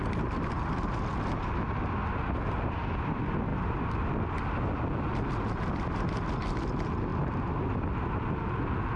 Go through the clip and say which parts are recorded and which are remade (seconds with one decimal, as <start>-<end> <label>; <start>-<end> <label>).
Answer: 0.0-3.5 recorded; 3.5-4.1 remade; 4.1-9.0 recorded